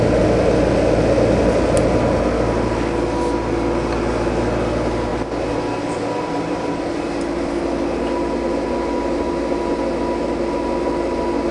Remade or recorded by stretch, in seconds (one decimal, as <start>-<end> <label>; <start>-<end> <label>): 0.0-11.5 recorded

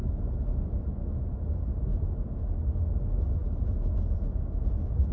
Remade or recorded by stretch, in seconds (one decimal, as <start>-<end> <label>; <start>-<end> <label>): 0.0-5.1 recorded

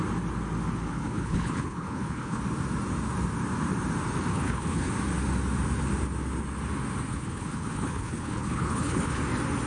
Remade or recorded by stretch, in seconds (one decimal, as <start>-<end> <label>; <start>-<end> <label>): 0.0-0.9 recorded; 0.9-2.4 remade; 2.4-4.3 recorded; 4.3-4.9 remade; 4.9-7.1 recorded; 7.1-9.2 remade; 9.2-9.7 recorded

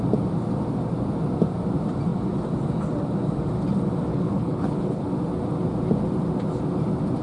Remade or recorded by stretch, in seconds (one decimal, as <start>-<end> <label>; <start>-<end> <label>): 0.0-4.1 recorded; 4.1-5.1 remade; 5.1-7.2 recorded

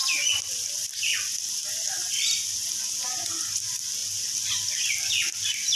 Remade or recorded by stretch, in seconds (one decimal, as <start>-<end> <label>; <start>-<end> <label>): 0.0-5.8 recorded

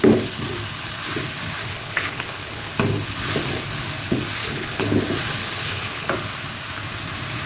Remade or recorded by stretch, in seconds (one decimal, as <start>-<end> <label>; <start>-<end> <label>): 0.0-1.7 recorded; 1.7-2.7 remade; 2.7-4.4 recorded; 4.4-5.0 remade; 5.0-5.4 recorded; 5.4-6.1 remade; 6.1-7.5 recorded